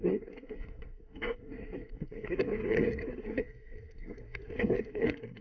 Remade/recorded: remade